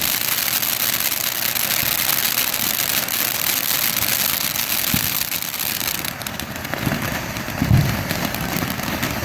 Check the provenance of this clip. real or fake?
real